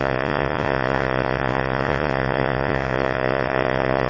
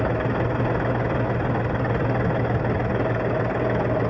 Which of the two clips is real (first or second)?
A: second